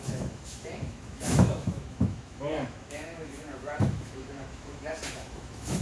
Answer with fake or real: fake